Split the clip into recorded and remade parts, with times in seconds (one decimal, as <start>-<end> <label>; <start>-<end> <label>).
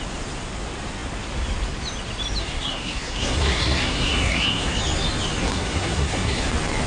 0.0-2.4 recorded; 2.4-4.8 remade; 4.8-5.4 recorded; 5.4-6.5 remade; 6.5-6.9 recorded